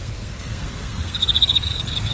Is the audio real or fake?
fake